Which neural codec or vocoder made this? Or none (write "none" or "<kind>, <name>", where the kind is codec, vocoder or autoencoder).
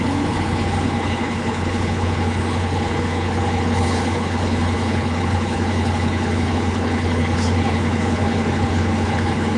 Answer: codec, HILCodec